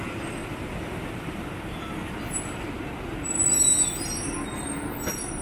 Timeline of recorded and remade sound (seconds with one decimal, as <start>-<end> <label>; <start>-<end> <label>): 0.0-5.4 recorded